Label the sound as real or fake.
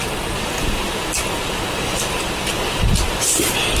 real